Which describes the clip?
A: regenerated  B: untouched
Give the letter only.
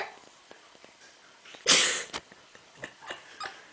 A